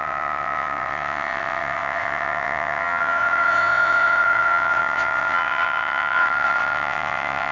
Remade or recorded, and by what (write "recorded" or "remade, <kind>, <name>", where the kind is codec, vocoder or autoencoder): remade, vocoder, WaveNeXt